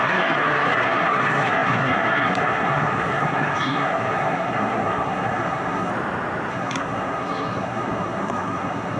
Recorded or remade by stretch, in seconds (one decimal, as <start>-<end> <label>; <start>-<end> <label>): 0.0-5.9 remade; 5.9-6.5 recorded; 6.5-9.0 remade